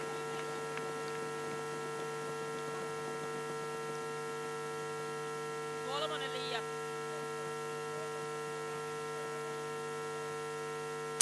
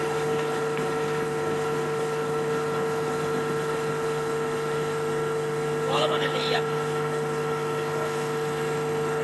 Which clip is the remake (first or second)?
second